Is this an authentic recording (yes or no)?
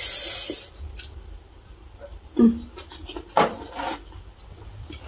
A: yes